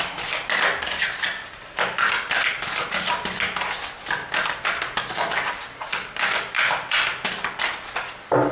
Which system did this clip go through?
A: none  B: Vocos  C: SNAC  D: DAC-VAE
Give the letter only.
A